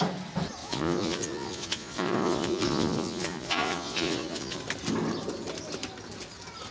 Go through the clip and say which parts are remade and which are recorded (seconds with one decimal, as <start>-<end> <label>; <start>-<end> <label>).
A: 0.0-0.6 recorded; 0.6-4.6 remade; 4.6-6.7 recorded